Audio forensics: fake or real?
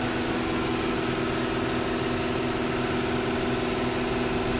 real